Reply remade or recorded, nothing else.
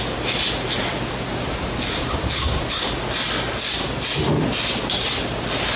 recorded